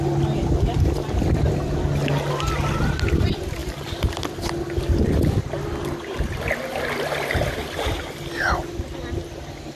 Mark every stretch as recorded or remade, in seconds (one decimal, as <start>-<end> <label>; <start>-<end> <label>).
0.0-9.7 recorded

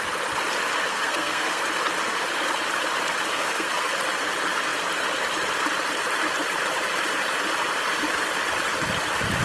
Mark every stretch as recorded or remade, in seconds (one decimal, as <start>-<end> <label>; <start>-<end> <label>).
0.0-0.9 recorded; 0.9-1.6 remade; 1.6-3.3 recorded; 3.3-3.9 remade; 3.9-9.4 recorded

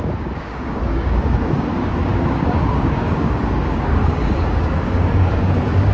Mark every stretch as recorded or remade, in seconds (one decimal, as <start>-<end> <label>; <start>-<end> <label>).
0.0-5.9 remade

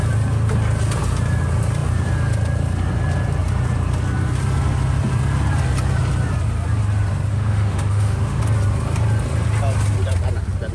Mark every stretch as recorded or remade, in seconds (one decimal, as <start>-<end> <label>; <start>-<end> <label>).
0.0-7.3 recorded; 7.3-8.4 remade; 8.4-10.7 recorded

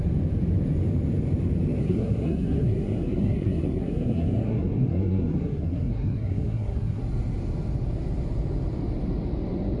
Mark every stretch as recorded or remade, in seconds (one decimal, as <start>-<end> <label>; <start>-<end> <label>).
0.0-1.8 recorded; 1.8-7.0 remade; 7.0-9.8 recorded

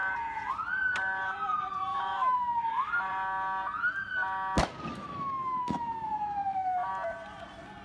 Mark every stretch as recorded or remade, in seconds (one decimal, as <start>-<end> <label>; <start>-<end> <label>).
0.0-1.9 recorded; 1.9-2.9 remade; 2.9-4.9 recorded; 4.9-6.9 remade; 6.9-7.8 recorded

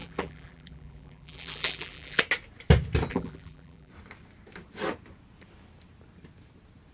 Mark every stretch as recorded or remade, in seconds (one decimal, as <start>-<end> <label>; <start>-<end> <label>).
0.0-2.2 remade; 2.2-3.1 recorded; 3.1-3.9 remade; 3.9-6.9 recorded